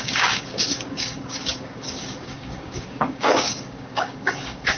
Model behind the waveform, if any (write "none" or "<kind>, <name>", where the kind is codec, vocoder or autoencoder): codec, DAC